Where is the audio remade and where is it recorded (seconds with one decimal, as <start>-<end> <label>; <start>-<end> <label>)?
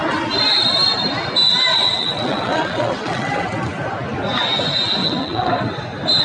0.0-1.7 recorded; 1.7-3.4 remade; 3.4-5.0 recorded; 5.0-5.5 remade; 5.5-6.2 recorded